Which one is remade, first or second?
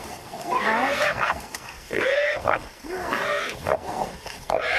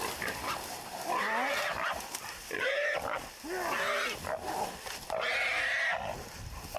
first